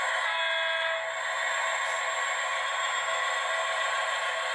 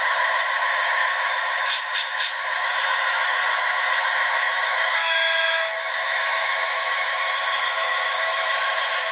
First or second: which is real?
first